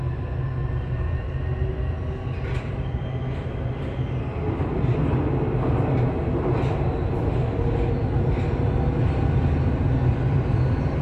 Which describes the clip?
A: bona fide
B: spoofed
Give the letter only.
A